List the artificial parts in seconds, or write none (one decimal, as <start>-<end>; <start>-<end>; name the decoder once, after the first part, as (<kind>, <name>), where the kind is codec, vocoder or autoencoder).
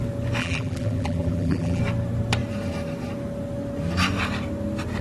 0.4-1.8 (vocoder, BigVGAN v2)